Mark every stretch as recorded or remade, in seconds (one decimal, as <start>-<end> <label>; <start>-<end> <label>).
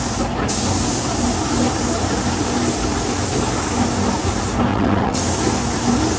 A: 0.0-4.7 recorded; 4.7-5.2 remade; 5.2-6.2 recorded